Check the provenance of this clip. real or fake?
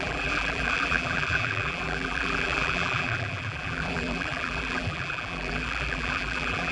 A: fake